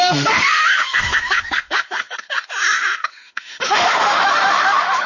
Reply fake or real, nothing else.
fake